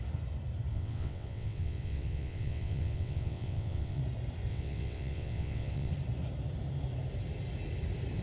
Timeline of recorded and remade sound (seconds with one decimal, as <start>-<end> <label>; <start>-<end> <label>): 0.0-0.7 recorded; 0.7-4.0 remade; 4.0-4.5 recorded; 4.5-5.9 remade; 5.9-8.2 recorded